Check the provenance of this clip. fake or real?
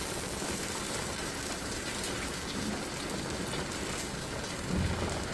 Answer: real